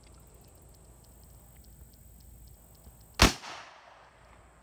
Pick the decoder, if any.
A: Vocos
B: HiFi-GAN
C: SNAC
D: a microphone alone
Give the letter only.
D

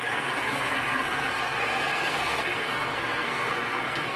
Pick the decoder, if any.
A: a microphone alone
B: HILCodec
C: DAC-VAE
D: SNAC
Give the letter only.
D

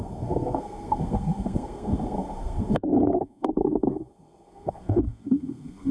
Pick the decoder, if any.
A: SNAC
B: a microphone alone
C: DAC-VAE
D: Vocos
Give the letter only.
A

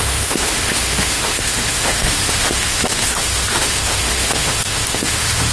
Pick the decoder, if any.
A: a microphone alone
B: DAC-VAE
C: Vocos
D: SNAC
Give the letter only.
B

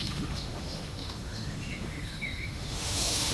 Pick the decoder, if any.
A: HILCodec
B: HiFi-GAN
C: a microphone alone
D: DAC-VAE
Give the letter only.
D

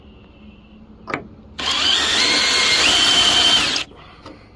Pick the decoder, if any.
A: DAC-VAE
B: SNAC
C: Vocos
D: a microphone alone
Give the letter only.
D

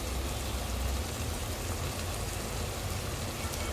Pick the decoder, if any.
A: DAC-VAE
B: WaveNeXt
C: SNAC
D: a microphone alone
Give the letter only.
D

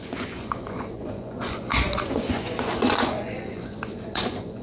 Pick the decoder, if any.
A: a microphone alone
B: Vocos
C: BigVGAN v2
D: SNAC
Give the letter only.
B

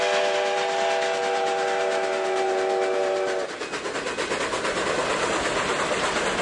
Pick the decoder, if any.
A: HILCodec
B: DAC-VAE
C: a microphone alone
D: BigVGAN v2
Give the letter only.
C